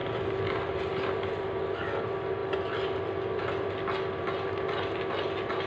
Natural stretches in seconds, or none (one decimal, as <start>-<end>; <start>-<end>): 0.0-5.7